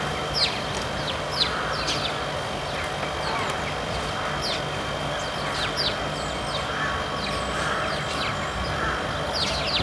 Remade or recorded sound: recorded